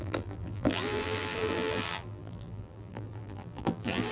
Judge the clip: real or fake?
fake